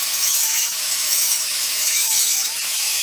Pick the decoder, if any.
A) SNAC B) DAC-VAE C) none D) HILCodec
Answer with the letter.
B